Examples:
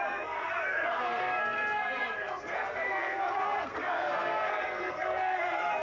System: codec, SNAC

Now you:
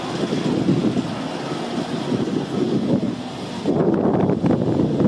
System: none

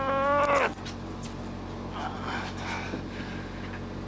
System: none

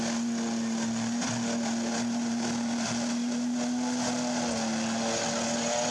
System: none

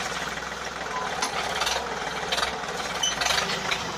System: none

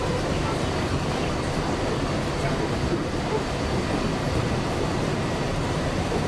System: vocoder, BigVGAN v2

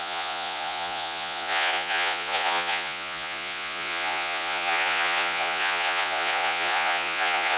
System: vocoder, Vocos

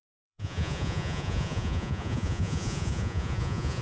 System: vocoder, Vocos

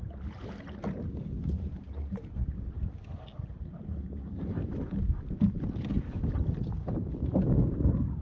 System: none